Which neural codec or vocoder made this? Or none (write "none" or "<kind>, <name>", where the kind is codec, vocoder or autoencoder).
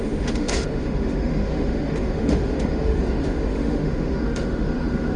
autoencoder, DAC-VAE